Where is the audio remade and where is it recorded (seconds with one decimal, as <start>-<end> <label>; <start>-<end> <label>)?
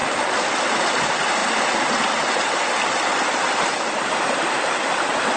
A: 0.0-5.4 recorded